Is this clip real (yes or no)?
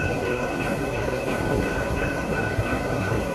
no